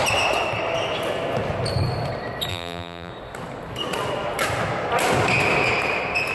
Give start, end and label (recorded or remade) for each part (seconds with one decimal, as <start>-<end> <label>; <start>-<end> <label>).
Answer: 0.0-2.5 recorded; 2.5-3.1 remade; 3.1-6.3 recorded